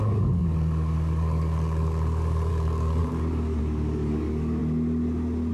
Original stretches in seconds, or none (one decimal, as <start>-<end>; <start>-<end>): 4.6-5.5